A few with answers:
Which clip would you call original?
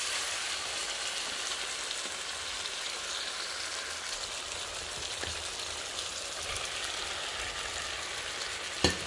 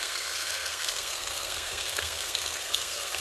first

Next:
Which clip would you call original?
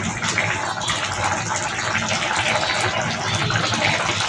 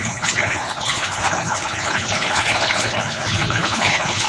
first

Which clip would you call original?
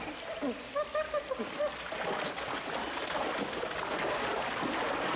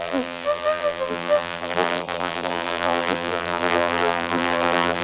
first